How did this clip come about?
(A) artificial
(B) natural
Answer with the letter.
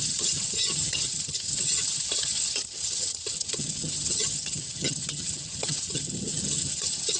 A